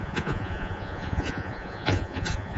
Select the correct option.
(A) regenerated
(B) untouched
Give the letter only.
A